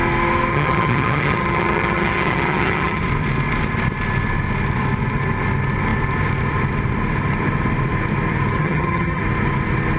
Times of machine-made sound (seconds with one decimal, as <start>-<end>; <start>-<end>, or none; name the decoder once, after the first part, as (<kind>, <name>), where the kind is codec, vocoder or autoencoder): 0.5-3.0 (vocoder, HiFi-GAN); 8.6-9.2